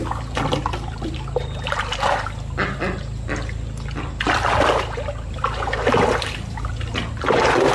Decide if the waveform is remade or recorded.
recorded